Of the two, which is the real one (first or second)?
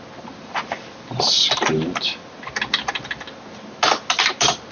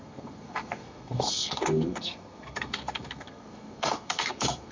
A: first